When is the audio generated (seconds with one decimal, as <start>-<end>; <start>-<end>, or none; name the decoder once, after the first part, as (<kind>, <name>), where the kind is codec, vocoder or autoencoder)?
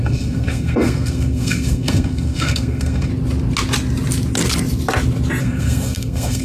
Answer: 0.0-3.1 (codec, SNAC); 5.4-6.4